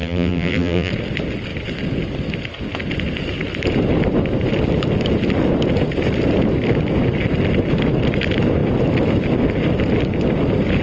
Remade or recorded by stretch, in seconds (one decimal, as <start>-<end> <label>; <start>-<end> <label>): 0.0-0.9 remade; 0.9-10.8 recorded